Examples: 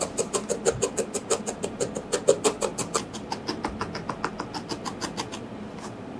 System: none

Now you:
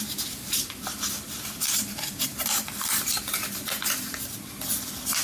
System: vocoder, BigVGAN v2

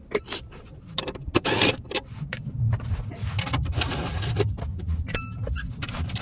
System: none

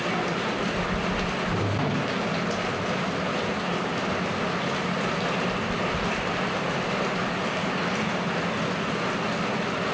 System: none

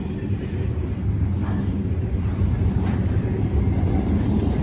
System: vocoder, BigVGAN v2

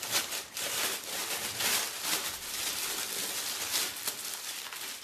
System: vocoder, BigVGAN v2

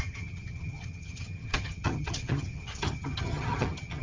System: vocoder, HiFi-GAN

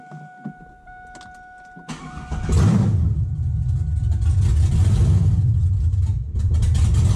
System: none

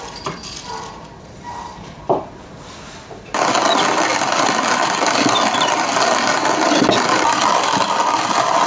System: none